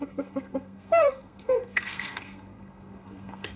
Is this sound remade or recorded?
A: remade